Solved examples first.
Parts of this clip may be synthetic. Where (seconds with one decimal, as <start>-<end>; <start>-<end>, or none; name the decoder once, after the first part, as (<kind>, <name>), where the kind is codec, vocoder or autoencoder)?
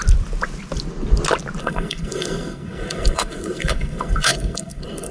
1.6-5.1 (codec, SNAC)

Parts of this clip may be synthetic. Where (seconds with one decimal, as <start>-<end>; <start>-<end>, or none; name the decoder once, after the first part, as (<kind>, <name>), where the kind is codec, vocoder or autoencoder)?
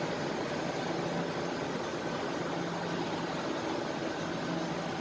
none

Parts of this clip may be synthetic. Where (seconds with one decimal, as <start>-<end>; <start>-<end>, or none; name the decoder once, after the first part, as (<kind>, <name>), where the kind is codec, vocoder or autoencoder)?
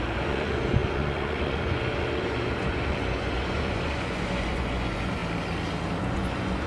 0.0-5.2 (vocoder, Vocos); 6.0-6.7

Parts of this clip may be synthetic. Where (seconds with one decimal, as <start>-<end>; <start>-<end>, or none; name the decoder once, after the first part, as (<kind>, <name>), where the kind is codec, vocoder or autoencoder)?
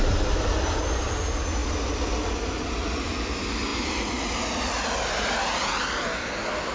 none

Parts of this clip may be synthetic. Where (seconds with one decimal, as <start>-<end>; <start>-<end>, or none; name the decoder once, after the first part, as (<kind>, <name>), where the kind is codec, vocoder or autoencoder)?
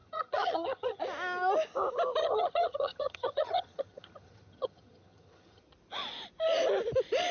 0.0-1.0 (vocoder, HiFi-GAN); 2.2-5.6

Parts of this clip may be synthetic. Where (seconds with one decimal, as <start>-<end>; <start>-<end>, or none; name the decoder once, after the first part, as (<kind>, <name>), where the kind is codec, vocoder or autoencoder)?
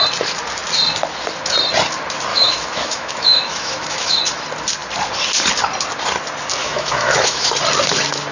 2.3-4.2 (autoencoder, DAC-VAE); 6.6-7.5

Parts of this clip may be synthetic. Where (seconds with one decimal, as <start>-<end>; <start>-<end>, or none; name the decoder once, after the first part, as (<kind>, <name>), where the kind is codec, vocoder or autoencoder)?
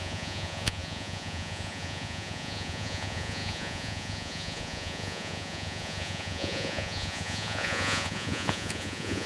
0.0-9.3 (vocoder, Vocos)